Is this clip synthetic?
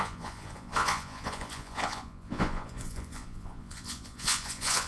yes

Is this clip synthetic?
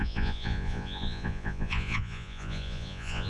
yes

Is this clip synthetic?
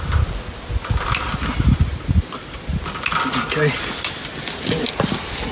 no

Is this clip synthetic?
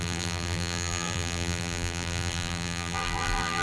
yes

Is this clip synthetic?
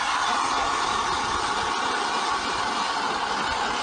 no